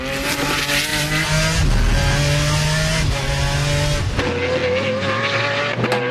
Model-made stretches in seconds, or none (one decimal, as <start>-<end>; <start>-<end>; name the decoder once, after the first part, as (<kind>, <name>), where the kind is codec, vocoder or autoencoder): none